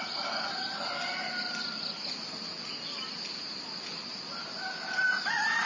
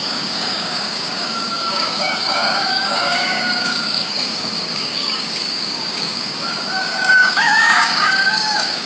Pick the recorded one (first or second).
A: first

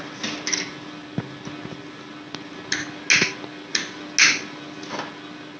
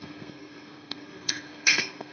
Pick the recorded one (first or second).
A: first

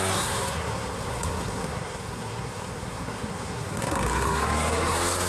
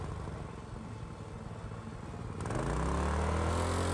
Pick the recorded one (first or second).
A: second